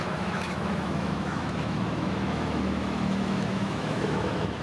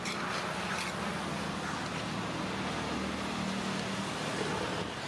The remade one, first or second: first